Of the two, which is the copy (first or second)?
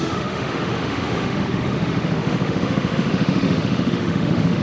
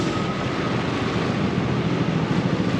first